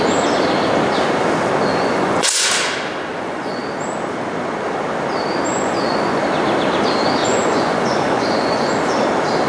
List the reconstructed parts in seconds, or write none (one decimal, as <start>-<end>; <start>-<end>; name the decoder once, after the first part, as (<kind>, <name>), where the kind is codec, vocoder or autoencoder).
1.7-2.5 (vocoder, Vocos); 3.1-3.6; 5.5-6.2; 7.2-8.7